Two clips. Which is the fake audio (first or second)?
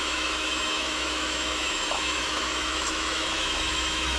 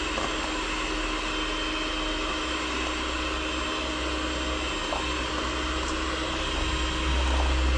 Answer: first